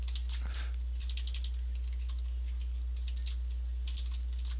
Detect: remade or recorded recorded